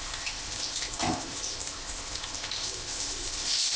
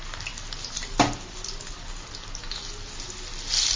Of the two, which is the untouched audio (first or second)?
second